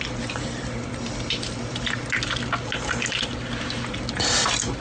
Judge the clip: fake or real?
real